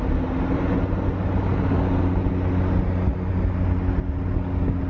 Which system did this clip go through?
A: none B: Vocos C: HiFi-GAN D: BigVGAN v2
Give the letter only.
A